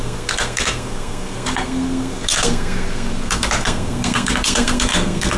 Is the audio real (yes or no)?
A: no